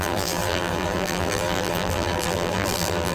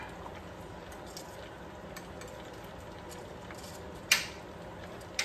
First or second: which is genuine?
second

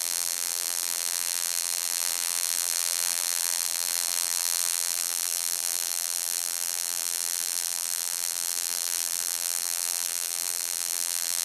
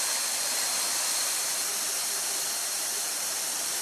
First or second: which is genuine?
second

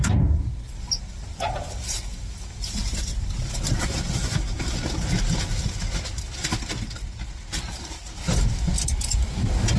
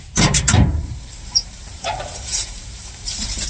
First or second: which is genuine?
first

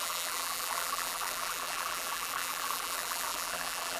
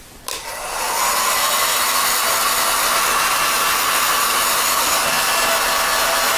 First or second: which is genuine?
second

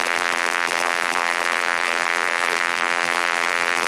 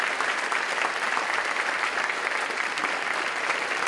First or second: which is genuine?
second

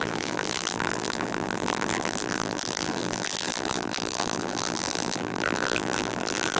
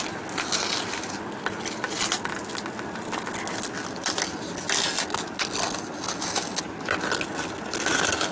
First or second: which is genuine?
second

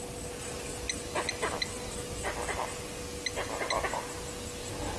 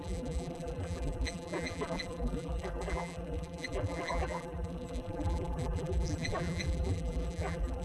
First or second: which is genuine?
first